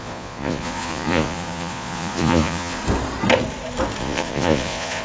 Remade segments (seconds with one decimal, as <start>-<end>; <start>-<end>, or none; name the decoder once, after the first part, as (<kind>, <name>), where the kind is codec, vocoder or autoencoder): 0.0-2.8 (vocoder, Vocos); 4.0-5.0